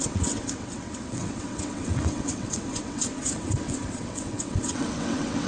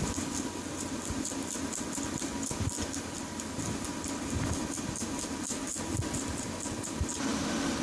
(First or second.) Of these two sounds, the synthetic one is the first